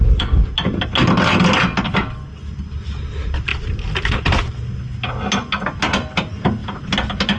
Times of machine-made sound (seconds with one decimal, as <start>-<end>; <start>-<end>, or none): none